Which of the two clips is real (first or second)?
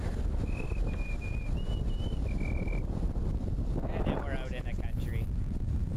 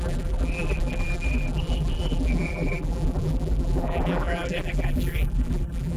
first